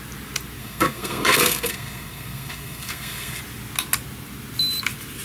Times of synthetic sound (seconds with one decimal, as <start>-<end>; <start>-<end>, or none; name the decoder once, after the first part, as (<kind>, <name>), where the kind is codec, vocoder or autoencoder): 0.6-3.4 (codec, SNAC)